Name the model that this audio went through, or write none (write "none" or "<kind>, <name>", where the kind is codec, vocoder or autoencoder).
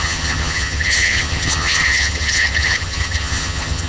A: vocoder, HiFi-GAN